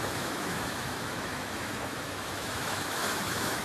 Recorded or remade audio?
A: remade